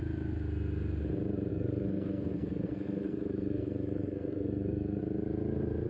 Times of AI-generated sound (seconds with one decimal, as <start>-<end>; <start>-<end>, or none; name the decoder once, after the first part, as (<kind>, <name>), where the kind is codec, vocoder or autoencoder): 1.5-5.0 (codec, SNAC)